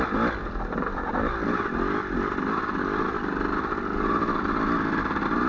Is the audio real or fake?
real